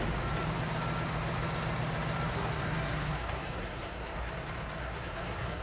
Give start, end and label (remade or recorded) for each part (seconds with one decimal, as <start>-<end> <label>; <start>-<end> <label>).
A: 0.0-2.3 recorded; 2.3-4.3 remade; 4.3-4.8 recorded; 4.8-5.6 remade